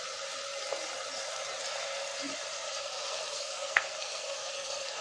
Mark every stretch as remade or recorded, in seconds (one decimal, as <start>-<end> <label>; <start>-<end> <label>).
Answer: 0.0-2.8 recorded; 2.8-5.0 remade